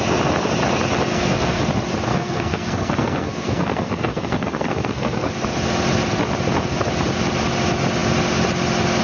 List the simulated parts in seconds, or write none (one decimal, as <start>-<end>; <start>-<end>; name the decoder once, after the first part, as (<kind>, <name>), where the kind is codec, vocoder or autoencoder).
1.1-1.6 (codec, SNAC); 2.1-5.3